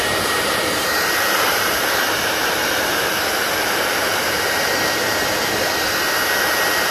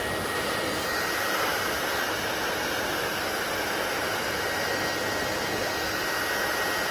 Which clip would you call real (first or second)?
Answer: second